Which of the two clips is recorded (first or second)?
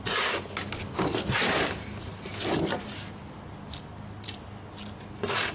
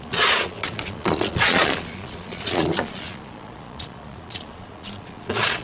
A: first